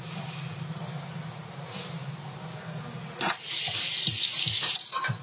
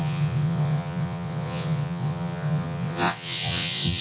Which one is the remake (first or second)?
second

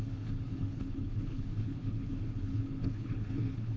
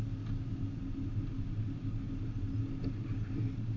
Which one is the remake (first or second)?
first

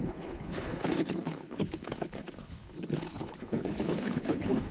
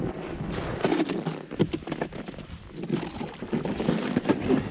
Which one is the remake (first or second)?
first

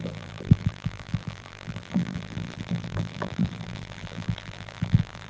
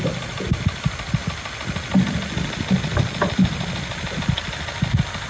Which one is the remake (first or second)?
first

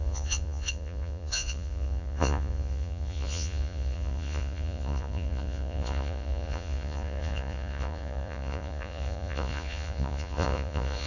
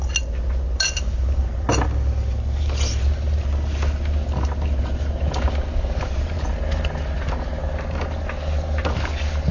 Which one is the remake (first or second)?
first